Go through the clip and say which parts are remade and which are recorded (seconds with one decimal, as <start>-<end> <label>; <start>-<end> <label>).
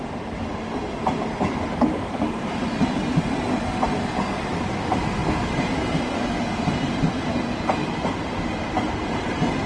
0.0-9.7 recorded